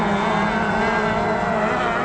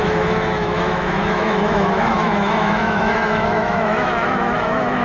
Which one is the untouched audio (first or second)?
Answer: first